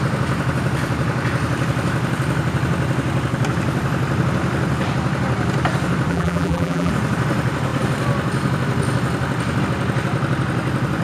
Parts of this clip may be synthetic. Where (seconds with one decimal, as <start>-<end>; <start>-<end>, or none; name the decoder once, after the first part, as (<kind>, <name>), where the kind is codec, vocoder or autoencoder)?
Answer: 6.1-6.9 (vocoder, BigVGAN v2)